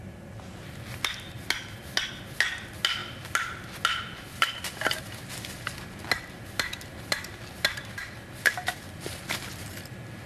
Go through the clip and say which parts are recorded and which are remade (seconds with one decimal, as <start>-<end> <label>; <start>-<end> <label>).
0.0-10.3 recorded